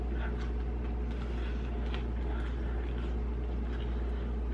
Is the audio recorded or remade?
recorded